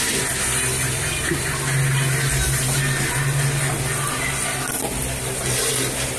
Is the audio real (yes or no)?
yes